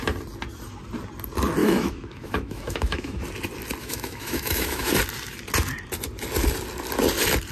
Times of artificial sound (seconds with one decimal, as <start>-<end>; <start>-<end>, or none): 1.6-3.2; 3.8-4.9